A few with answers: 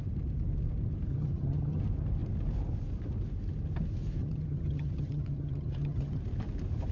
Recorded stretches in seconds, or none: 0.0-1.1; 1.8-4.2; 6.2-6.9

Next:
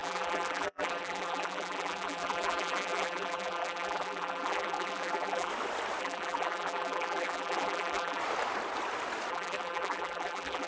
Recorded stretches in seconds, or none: 5.5-6.0; 8.2-9.3

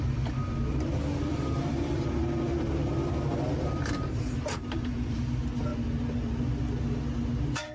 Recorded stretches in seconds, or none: 0.0-1.3; 5.2-7.7

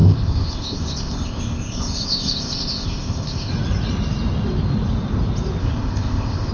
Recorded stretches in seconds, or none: 3.5-5.6